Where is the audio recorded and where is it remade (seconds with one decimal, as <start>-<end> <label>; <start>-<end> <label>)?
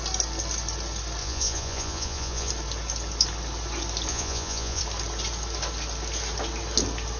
0.0-1.2 recorded; 1.2-2.5 remade; 2.5-4.1 recorded; 4.1-4.8 remade; 4.8-7.2 recorded